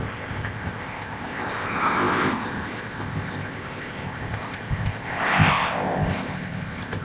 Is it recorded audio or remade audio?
remade